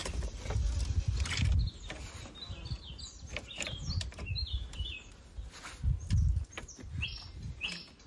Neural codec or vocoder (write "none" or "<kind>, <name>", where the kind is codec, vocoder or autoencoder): none